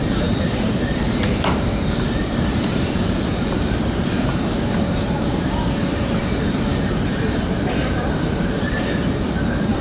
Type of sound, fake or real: fake